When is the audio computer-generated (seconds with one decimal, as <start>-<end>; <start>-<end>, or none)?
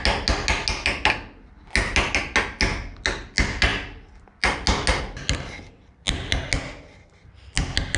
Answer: none